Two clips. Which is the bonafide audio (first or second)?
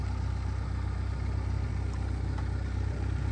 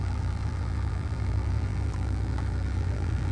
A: first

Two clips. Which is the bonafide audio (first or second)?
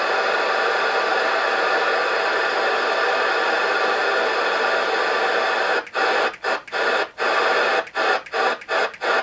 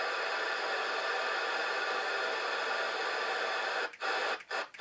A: first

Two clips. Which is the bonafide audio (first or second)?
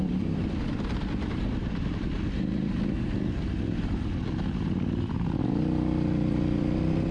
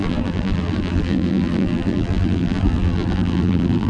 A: first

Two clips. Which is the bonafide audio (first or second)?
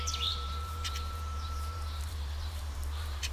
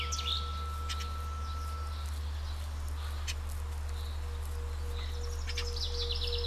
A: second